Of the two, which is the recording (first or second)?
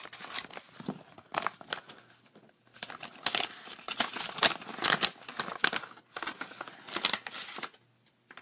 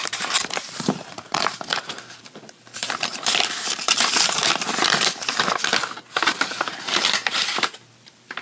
first